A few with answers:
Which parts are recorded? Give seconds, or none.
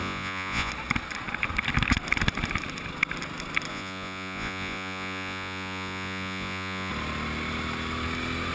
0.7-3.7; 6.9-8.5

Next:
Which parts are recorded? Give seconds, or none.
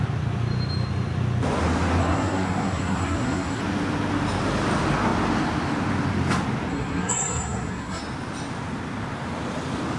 0.0-2.0; 3.6-6.7; 8.0-10.0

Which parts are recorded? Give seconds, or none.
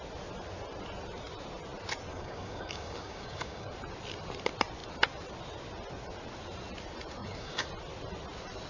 0.0-2.1; 3.7-7.2; 7.7-8.7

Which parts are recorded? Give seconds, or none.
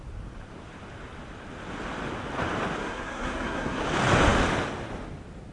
0.0-2.8; 3.8-5.5